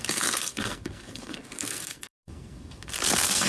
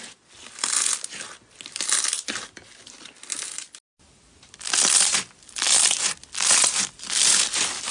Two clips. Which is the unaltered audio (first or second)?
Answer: second